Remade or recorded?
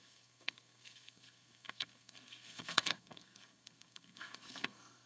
remade